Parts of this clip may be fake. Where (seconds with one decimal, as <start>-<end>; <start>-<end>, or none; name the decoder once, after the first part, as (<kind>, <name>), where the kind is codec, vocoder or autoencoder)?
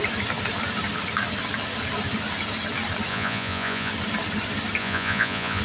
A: 3.1-3.9 (vocoder, Vocos); 4.8-5.6